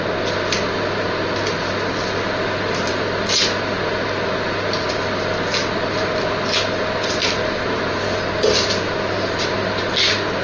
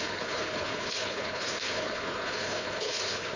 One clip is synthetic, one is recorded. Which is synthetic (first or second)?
second